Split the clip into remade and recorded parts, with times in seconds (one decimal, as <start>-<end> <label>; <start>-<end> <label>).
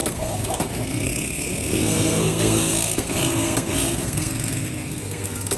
0.0-5.6 remade